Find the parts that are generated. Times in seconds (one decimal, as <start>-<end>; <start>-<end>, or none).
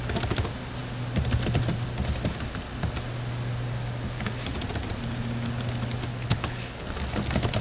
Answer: 6.1-6.9